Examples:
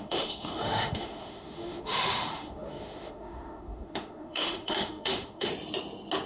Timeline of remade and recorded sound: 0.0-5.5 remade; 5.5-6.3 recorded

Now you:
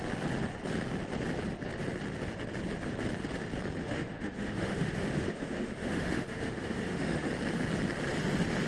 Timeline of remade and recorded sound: 0.0-3.8 recorded; 3.8-7.3 remade; 7.3-8.7 recorded

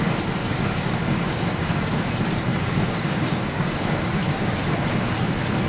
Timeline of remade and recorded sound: 0.0-0.4 recorded; 0.4-1.9 remade; 1.9-2.5 recorded; 2.5-4.6 remade; 4.6-5.7 recorded

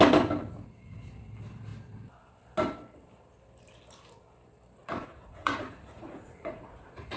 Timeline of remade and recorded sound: 0.0-4.8 recorded; 4.8-7.2 remade